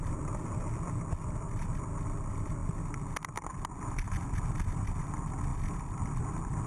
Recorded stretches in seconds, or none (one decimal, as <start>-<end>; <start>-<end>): 0.0-6.7